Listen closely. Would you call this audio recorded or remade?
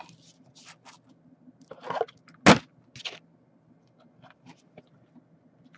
recorded